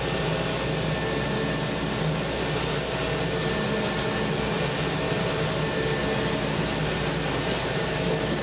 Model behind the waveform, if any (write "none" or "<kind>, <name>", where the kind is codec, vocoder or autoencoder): none